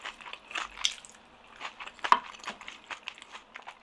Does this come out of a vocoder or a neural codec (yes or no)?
no